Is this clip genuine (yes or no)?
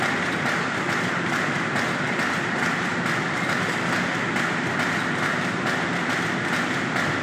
yes